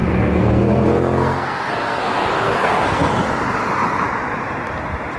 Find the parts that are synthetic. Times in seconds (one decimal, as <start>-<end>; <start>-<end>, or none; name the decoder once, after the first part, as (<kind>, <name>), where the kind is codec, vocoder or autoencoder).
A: 0.0-3.1 (codec, SNAC)